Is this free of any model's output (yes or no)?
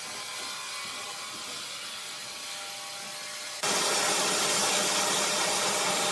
yes